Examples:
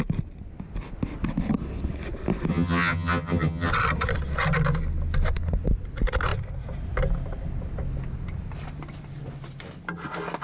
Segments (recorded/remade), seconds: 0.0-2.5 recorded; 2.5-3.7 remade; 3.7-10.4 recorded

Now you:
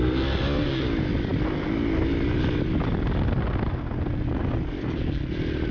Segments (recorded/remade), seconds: 0.0-5.7 recorded

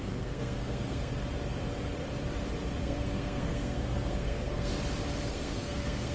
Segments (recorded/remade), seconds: 0.0-1.1 remade; 1.1-2.8 recorded; 2.8-4.7 remade; 4.7-5.3 recorded; 5.3-6.1 remade

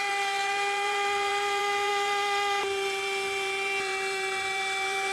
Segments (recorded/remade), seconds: 0.0-5.1 remade

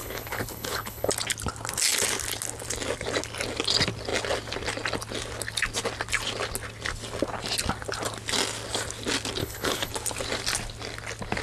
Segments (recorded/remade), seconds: 0.0-1.1 remade; 1.1-9.4 recorded; 9.4-9.9 remade; 9.9-11.4 recorded

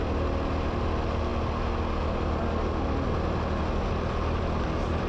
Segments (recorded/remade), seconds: 0.0-5.1 recorded

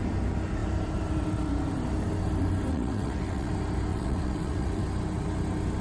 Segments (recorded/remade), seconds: 0.0-2.7 recorded; 2.7-3.5 remade; 3.5-3.9 recorded; 3.9-4.8 remade; 4.8-5.8 recorded

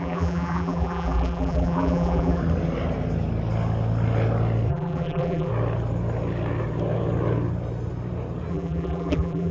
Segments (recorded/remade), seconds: 0.0-2.4 remade; 2.4-4.7 recorded; 4.7-5.5 remade; 5.5-8.5 recorded; 8.5-9.5 remade